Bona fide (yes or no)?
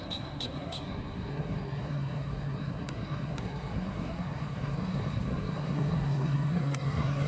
no